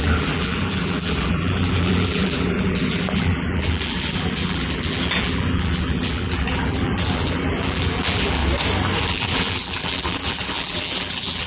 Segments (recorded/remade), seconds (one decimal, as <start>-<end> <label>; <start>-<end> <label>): 0.0-8.4 remade; 8.4-9.0 recorded; 9.0-11.5 remade